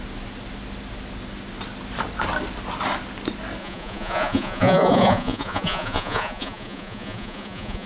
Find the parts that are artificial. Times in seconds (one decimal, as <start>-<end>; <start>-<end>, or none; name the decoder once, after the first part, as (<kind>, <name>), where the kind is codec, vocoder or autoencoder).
3.6-7.9 (vocoder, Vocos)